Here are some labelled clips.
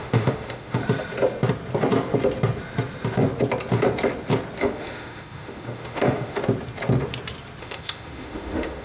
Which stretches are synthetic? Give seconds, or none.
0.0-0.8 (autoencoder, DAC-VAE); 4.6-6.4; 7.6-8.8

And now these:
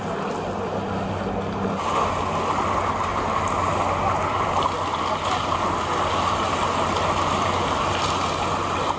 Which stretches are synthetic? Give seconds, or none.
3.1-4.5 (vocoder, BigVGAN v2)

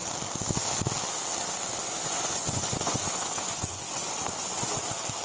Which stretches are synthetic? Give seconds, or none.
1.7-4.8 (vocoder, Vocos)

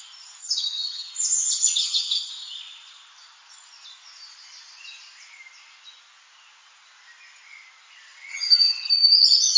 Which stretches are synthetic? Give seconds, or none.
0.4-1.1 (vocoder, HiFi-GAN); 1.8-2.3; 8.3-8.9

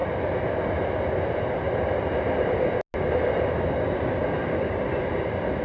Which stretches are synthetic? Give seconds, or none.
none

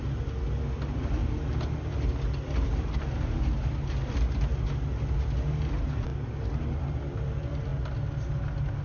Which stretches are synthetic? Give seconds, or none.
none

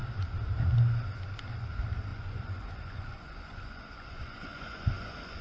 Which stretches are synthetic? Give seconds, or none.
2.1-5.4 (vocoder, Vocos)

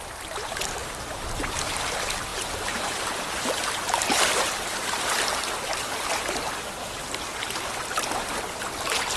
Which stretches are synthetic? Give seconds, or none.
2.3-4.3 (vocoder, BigVGAN v2)